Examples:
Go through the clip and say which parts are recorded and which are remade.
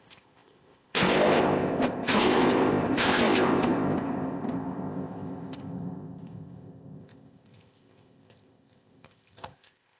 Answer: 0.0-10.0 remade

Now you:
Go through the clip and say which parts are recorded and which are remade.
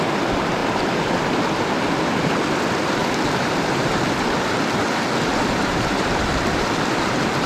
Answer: 0.0-3.0 recorded; 3.0-4.8 remade; 4.8-5.3 recorded; 5.3-6.2 remade; 6.2-7.5 recorded